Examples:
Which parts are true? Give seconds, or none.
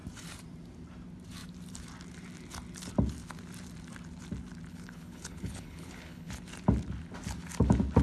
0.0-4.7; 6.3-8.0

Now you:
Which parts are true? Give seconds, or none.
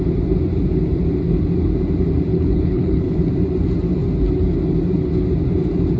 0.0-2.3; 3.2-6.0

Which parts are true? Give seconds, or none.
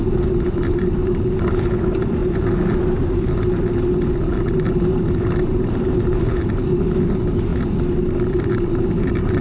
0.0-9.4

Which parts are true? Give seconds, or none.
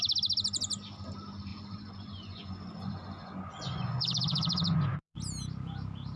0.0-1.5; 5.2-6.2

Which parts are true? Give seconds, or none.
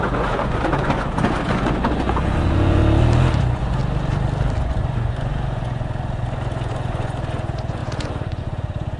2.8-3.4; 3.8-4.6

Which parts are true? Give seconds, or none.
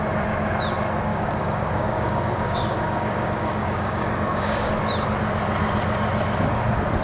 0.0-1.1; 4.7-7.0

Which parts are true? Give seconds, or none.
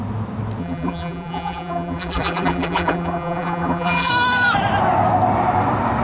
0.0-0.6; 4.1-6.0